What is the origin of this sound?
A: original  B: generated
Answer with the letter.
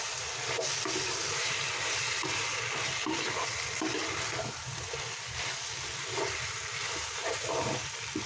B